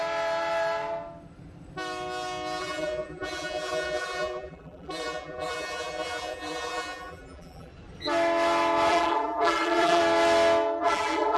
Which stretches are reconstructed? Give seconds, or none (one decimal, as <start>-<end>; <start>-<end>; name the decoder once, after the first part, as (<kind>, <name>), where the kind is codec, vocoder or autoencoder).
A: 2.6-7.7 (vocoder, BigVGAN v2); 8.9-10.0; 10.8-11.4